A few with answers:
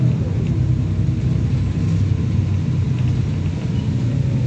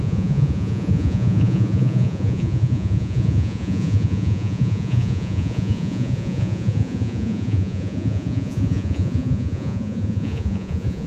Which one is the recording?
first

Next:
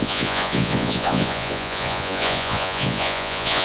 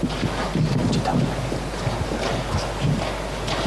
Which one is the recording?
second